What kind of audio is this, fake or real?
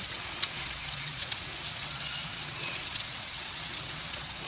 fake